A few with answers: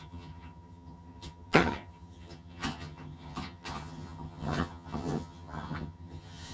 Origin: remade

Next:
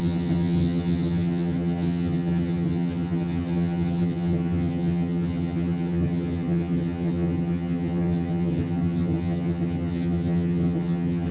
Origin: remade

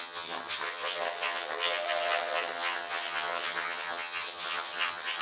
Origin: remade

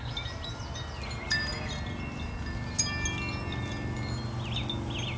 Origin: recorded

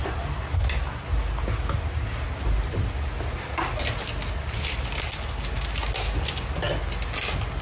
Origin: recorded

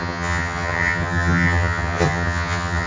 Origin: remade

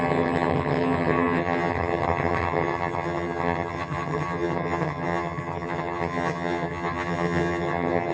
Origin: remade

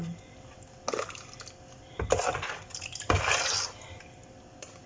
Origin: recorded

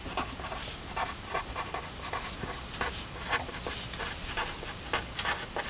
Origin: recorded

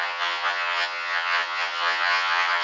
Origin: remade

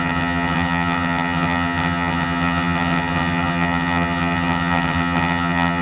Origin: remade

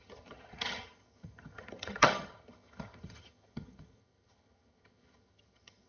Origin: remade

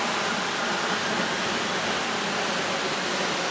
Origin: recorded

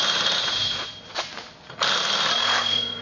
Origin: recorded